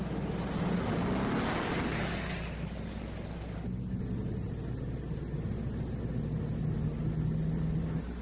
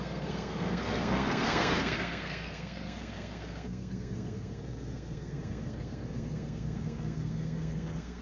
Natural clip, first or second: first